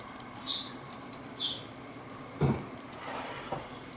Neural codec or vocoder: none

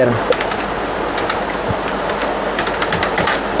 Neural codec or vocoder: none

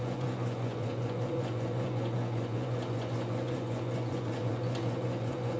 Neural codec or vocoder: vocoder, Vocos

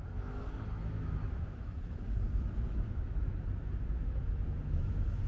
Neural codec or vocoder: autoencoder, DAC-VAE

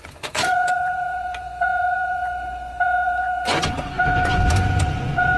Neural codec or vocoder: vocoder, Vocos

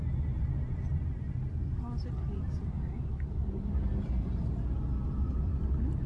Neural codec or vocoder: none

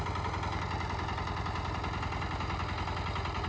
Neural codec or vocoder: none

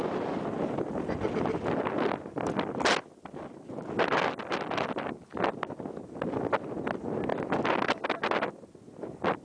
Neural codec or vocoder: none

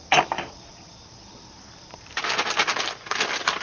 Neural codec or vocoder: vocoder, BigVGAN v2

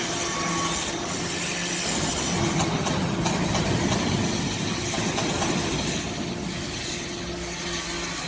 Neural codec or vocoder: none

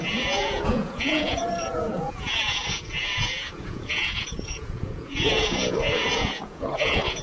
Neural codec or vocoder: vocoder, Vocos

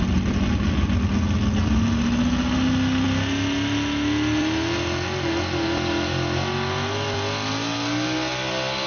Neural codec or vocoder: none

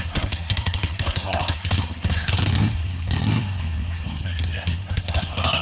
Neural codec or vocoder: codec, SNAC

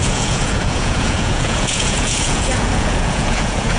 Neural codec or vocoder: vocoder, Vocos